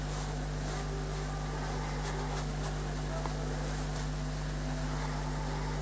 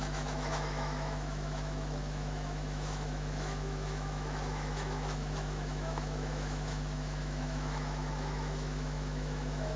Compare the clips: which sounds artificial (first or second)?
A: second